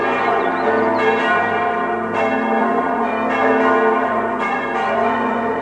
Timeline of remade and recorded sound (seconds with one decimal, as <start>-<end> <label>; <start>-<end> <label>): 0.0-0.5 remade; 0.5-2.6 recorded; 2.6-3.1 remade; 3.1-4.1 recorded; 4.1-5.6 remade